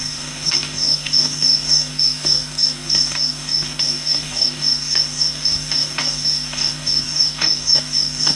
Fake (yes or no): yes